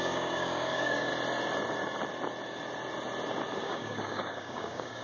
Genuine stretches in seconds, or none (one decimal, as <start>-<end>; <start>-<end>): 1.1-3.6